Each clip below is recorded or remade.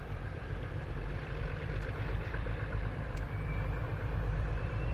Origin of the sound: remade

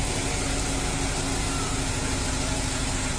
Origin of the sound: recorded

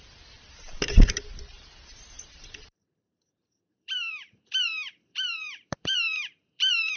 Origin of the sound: remade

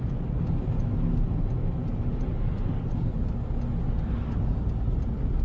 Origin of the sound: recorded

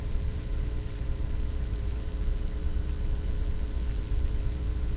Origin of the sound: remade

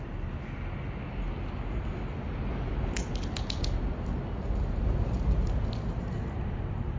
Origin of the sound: recorded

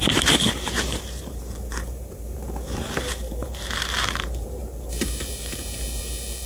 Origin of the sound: remade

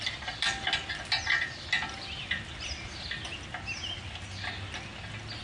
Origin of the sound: recorded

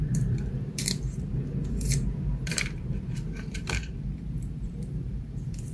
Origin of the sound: remade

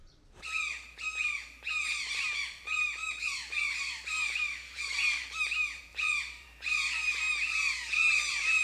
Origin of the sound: remade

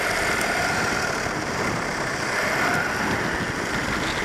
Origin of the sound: recorded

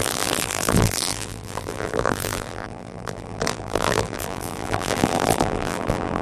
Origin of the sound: remade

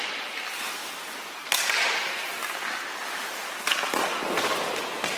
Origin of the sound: remade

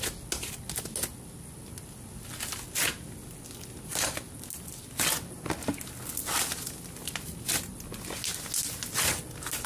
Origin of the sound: recorded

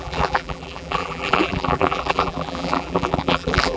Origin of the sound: remade